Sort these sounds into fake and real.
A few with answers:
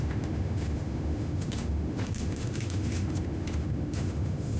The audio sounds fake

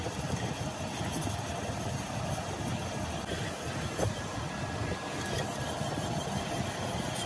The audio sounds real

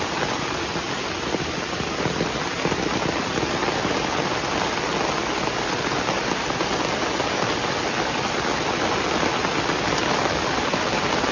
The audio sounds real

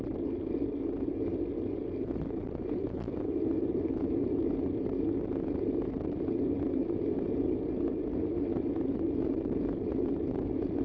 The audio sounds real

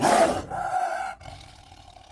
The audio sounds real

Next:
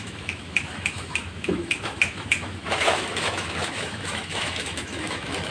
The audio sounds fake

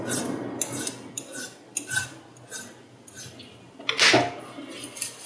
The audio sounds real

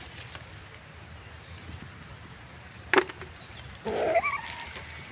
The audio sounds real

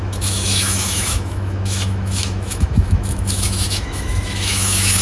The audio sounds fake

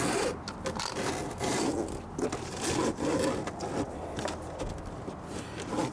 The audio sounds real